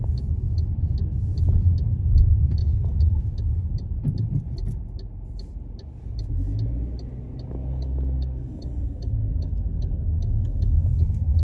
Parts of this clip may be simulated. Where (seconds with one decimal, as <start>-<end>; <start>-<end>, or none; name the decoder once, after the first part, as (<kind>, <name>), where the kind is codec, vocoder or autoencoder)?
2.6-3.2 (codec, DAC); 7.6-11.0